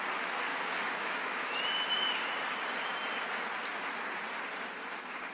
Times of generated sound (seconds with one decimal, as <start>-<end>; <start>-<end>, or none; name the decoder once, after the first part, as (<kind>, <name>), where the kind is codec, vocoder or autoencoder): 0.5-1.4 (codec, DAC)